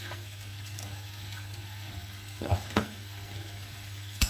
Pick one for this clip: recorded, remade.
remade